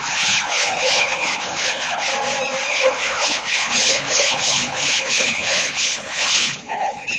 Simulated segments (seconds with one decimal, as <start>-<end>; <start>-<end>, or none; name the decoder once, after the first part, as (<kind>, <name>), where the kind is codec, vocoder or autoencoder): 0.0-2.1 (codec, HILCodec); 2.7-7.2